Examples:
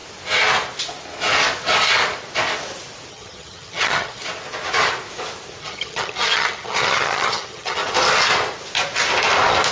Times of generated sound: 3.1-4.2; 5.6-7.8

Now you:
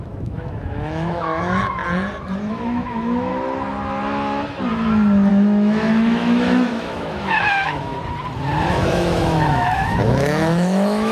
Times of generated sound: 0.0-1.8; 2.5-3.3; 5.3-7.9; 8.7-11.1

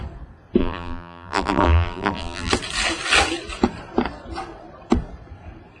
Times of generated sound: 0.6-2.5

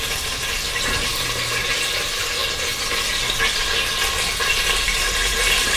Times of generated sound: 0.0-2.4; 4.8-5.8

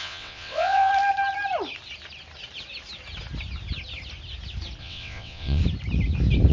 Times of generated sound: 0.0-0.9; 4.8-5.6